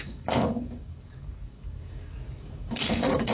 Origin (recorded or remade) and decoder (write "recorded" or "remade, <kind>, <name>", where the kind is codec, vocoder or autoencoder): remade, codec, DAC